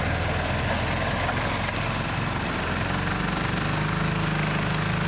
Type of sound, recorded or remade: recorded